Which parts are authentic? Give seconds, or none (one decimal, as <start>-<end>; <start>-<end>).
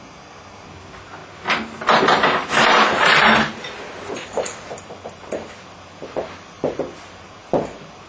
0.0-8.1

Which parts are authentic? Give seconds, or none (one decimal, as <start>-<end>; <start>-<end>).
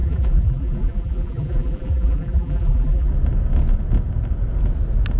3.1-5.2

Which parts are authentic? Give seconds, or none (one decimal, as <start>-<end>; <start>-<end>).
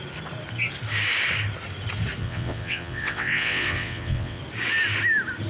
0.0-2.2; 4.4-5.5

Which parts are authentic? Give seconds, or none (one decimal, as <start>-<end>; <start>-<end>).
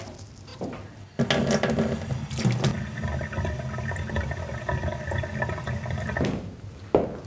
0.0-7.3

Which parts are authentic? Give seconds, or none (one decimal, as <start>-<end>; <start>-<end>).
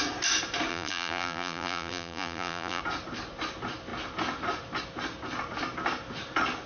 0.0-0.7; 2.8-6.7